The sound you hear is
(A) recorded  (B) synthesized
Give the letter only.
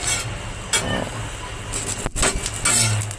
A